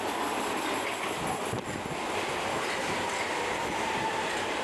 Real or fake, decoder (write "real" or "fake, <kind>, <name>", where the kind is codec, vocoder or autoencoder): real